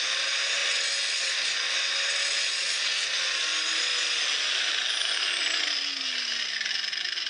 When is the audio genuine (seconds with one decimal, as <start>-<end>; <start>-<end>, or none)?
0.0-7.3